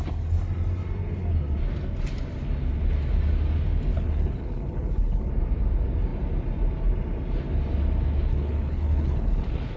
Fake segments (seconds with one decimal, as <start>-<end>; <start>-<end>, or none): 3.9-5.3; 8.3-9.8